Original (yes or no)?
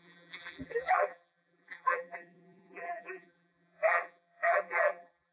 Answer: no